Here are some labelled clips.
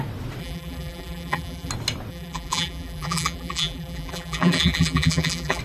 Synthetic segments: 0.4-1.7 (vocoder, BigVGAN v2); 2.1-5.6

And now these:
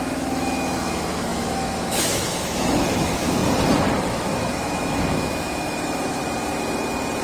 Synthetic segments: 0.0-3.4 (autoencoder, DAC-VAE); 4.0-6.2

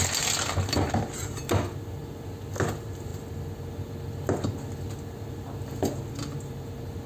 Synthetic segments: none

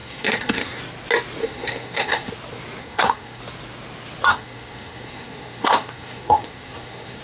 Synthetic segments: 0.0-0.8 (codec, SNAC); 1.4-2.3; 2.8-3.4; 4.3-7.2

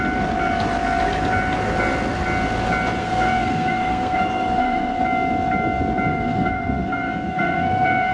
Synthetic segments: 3.0-5.0 (codec, SNAC); 6.1-8.1

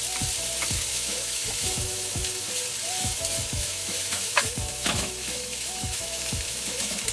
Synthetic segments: 0.9-2.5 (autoencoder, DAC-VAE); 3.0-7.1